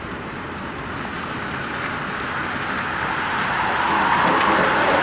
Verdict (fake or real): real